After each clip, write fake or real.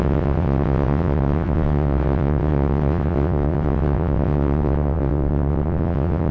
fake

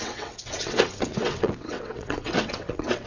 fake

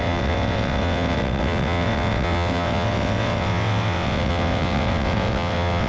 fake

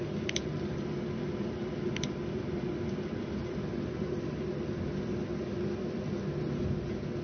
real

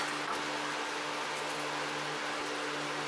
real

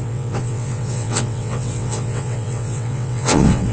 fake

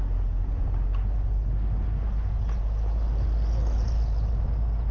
real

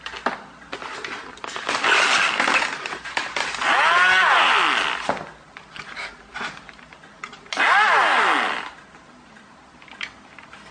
real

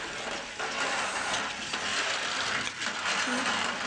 real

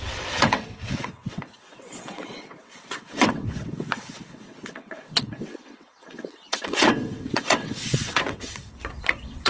fake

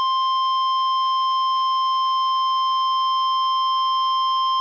real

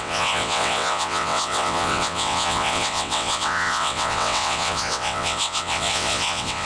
fake